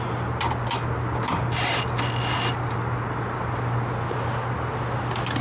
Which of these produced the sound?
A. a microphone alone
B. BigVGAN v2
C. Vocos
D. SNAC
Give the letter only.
A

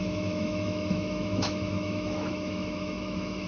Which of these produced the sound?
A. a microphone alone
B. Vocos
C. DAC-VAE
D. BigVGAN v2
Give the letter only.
C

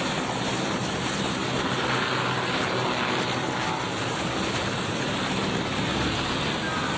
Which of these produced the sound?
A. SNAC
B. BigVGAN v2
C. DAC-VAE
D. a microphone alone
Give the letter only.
D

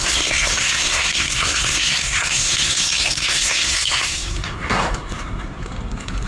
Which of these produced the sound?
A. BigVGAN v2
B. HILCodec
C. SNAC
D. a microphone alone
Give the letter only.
C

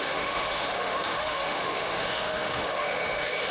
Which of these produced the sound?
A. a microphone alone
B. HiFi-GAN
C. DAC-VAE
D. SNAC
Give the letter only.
C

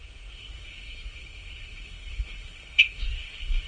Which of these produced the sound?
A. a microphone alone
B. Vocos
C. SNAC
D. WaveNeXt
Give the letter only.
C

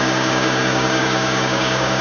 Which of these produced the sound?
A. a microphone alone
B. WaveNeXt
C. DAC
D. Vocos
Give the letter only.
C